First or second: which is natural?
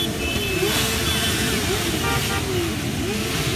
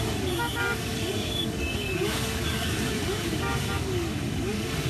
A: first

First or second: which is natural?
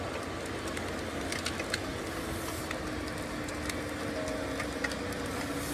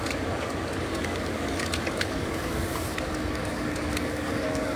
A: first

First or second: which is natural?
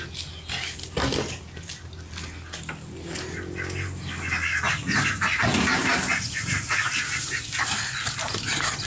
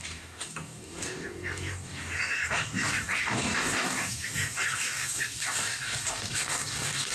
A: first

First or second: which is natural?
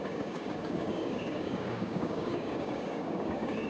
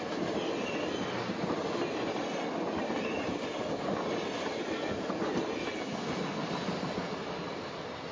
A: second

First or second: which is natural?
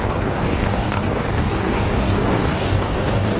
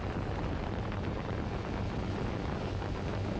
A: second